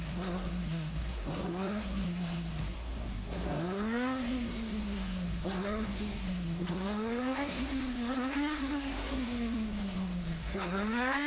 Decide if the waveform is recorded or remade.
remade